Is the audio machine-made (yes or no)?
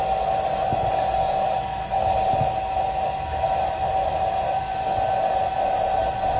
no